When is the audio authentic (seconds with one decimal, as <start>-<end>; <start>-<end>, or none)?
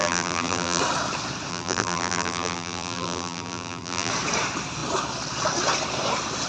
0.8-1.5; 4.1-6.5